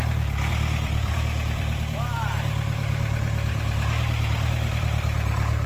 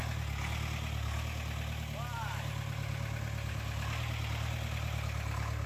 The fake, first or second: first